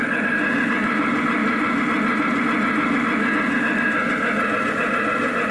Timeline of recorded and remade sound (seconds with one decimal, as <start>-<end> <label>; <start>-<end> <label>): 0.0-0.7 recorded; 0.7-1.4 remade; 1.4-4.7 recorded; 4.7-5.5 remade